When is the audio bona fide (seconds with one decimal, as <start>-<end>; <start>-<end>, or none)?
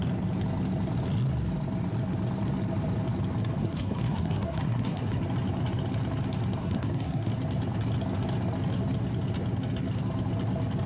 0.0-3.6; 5.2-6.6; 7.3-10.9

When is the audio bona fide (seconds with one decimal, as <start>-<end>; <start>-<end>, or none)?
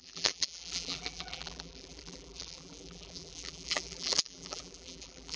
none